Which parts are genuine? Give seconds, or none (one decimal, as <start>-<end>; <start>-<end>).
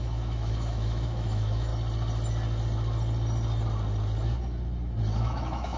1.7-5.2